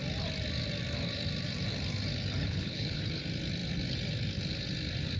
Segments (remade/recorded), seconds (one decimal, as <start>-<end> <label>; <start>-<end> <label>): 0.0-2.4 recorded; 2.4-3.0 remade; 3.0-5.2 recorded